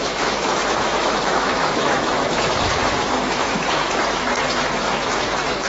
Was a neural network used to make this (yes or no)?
yes